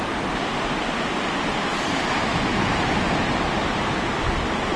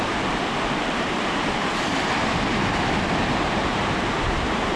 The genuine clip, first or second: first